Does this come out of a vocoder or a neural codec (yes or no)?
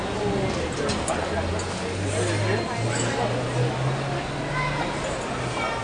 no